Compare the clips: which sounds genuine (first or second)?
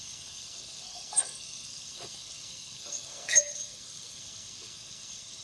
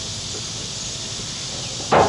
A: second